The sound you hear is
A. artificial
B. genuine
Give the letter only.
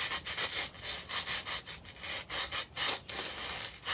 B